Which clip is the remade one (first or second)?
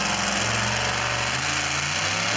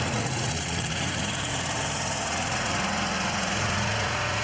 second